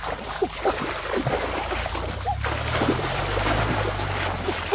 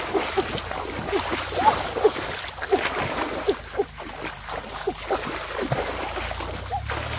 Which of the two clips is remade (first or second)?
first